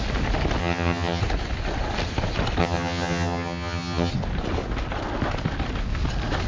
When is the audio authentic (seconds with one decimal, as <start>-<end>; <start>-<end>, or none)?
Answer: 0.0-0.6; 1.2-2.6; 4.1-6.5